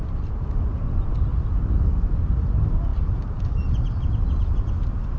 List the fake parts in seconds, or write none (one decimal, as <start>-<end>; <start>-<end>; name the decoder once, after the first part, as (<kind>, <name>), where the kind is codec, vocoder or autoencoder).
none